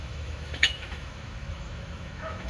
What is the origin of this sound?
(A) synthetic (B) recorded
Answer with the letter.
A